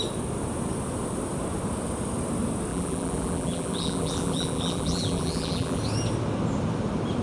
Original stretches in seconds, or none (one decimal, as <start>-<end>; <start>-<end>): 0.0-2.7; 5.8-7.2